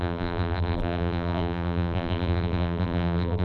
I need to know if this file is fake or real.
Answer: fake